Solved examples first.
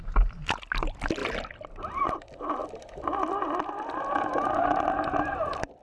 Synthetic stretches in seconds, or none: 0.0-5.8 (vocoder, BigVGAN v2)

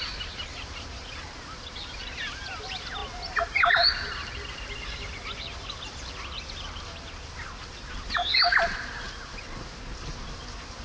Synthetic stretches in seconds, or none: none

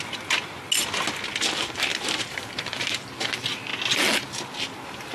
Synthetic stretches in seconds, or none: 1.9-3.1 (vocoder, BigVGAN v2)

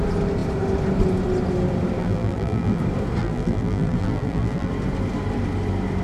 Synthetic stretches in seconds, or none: 2.0-2.8 (vocoder, BigVGAN v2); 3.2-4.7

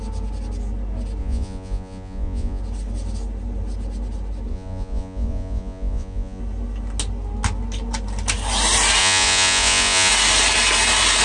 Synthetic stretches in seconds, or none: 1.2-2.6 (vocoder, Vocos); 4.5-6.4; 9.0-10.1

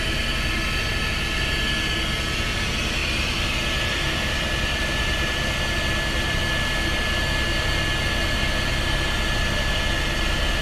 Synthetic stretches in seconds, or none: 3.0-6.4 (vocoder, BigVGAN v2)

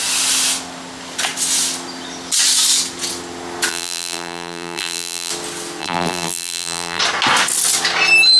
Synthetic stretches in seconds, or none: 3.7-5.3 (vocoder, BigVGAN v2); 5.8-7.0